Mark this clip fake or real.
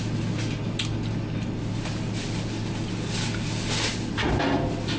real